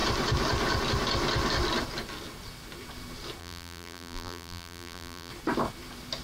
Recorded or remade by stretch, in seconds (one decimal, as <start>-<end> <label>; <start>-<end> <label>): 0.0-3.4 recorded; 3.4-5.3 remade; 5.3-6.2 recorded